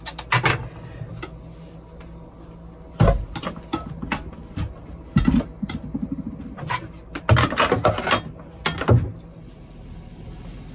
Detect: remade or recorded recorded